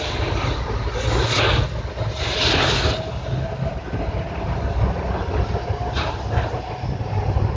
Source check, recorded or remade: recorded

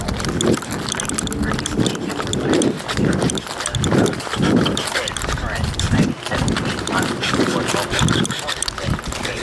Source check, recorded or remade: recorded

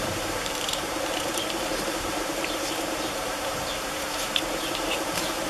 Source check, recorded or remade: remade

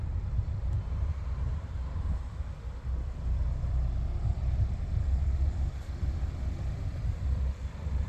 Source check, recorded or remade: remade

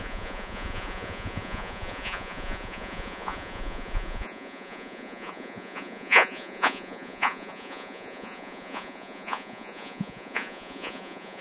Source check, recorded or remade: remade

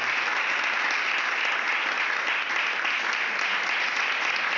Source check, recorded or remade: recorded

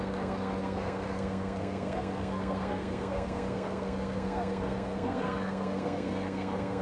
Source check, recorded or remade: remade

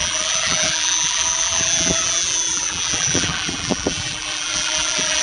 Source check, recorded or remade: remade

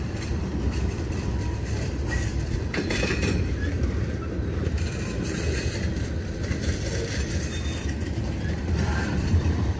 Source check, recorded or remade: remade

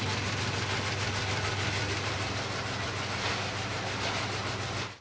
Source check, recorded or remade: recorded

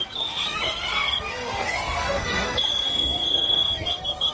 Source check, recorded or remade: remade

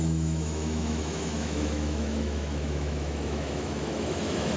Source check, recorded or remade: remade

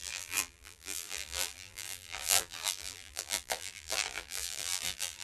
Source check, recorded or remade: remade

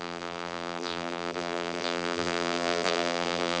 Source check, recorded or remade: remade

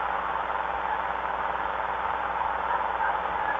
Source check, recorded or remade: recorded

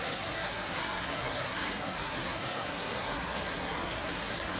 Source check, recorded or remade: remade